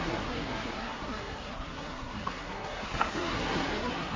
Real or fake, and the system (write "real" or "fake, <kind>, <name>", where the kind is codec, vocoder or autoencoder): fake, codec, SNAC